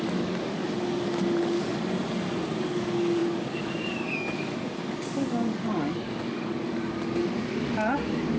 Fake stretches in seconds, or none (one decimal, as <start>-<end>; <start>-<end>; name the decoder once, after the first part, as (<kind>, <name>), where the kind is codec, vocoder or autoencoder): 0.0-1.7 (codec, DAC); 2.6-8.4